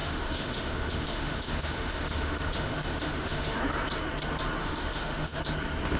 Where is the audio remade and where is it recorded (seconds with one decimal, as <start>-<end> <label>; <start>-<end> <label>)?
0.0-3.6 remade; 3.6-4.6 recorded; 4.6-5.4 remade; 5.4-6.0 recorded